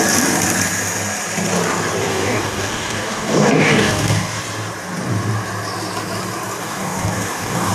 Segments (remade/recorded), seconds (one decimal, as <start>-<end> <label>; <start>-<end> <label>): 0.0-2.1 recorded; 2.1-4.4 remade; 4.4-6.6 recorded; 6.6-7.7 remade